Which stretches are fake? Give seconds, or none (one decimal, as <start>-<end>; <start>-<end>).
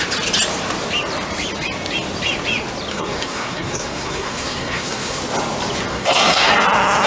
2.9-5.2; 5.9-6.5